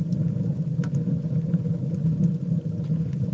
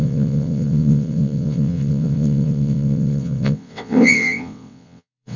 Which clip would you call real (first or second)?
first